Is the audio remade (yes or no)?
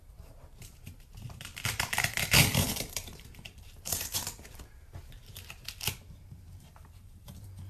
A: yes